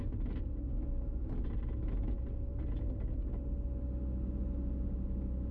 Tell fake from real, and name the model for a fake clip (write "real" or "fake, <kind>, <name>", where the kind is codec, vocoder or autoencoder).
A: real